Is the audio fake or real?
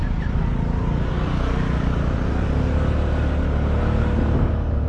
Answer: real